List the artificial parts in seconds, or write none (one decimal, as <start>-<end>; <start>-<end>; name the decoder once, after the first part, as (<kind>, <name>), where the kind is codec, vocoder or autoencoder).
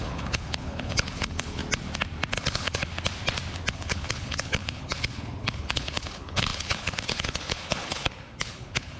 0.0-1.6 (codec, HILCodec); 2.4-2.9; 3.7-9.0